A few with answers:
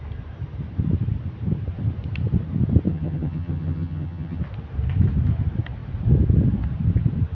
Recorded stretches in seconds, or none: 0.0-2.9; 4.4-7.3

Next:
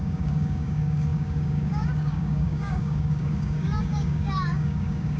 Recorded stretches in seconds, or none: none

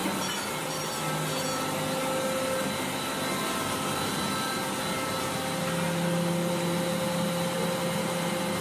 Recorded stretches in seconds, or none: 0.0-8.6

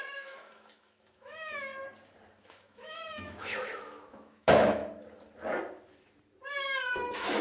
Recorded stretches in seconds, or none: 1.7-2.4; 4.8-6.5

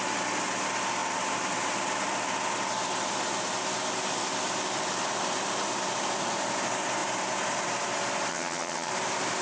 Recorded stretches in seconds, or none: 0.0-8.3; 8.9-9.4

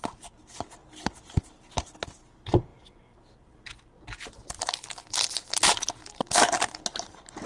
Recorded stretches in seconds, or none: 0.0-7.5